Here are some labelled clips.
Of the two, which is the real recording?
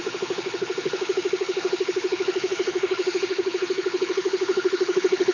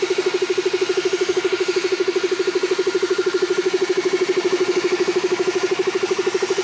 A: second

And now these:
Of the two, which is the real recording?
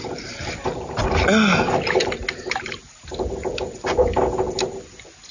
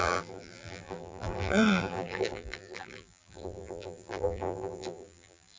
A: first